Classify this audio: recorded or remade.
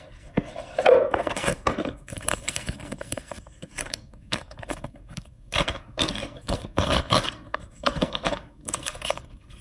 remade